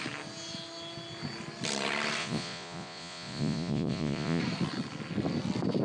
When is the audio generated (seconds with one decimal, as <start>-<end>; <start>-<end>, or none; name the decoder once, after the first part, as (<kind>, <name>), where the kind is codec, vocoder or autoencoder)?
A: 2.2-4.4 (vocoder, Vocos)